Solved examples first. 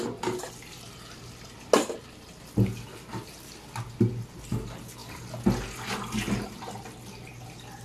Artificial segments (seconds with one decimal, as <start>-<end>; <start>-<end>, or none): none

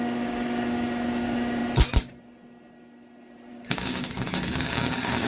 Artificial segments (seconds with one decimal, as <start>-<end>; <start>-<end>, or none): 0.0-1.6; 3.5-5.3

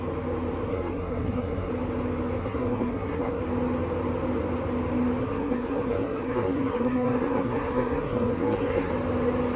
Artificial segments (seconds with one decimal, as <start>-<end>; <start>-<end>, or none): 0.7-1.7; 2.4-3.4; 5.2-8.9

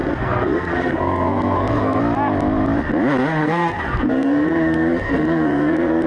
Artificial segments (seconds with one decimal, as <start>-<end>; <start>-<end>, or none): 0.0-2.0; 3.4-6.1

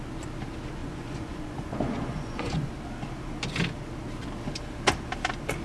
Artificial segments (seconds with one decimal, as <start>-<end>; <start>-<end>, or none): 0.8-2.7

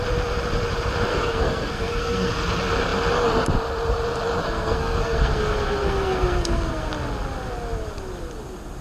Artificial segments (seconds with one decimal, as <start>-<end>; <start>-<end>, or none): 1.1-2.3; 4.4-6.9

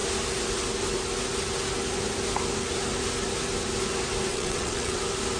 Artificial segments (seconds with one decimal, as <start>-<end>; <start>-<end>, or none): 4.3-5.0

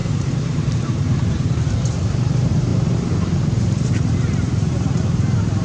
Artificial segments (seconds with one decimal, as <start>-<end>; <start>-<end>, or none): 0.0-5.6